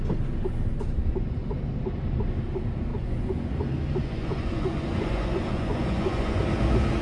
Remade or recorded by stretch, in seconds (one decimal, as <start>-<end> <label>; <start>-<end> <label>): 0.0-2.9 recorded; 2.9-3.4 remade; 3.4-4.0 recorded; 4.0-6.4 remade; 6.4-7.0 recorded